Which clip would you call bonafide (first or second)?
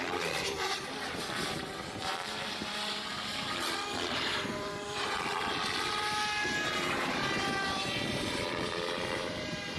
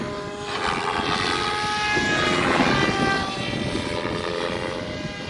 second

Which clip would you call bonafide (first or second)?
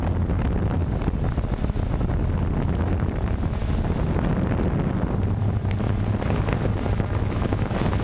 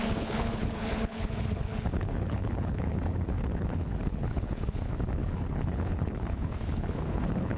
first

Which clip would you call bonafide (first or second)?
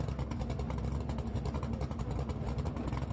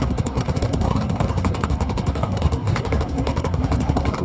first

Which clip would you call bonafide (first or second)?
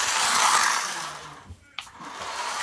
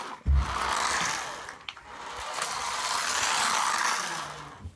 second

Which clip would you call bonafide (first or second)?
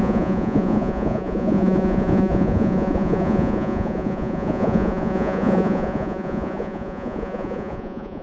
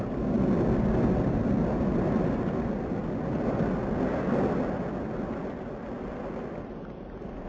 second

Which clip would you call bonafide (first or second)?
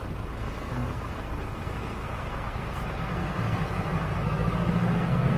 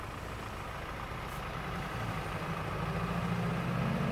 second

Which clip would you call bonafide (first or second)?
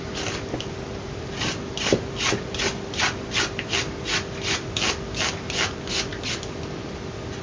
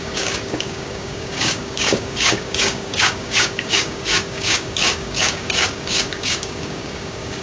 first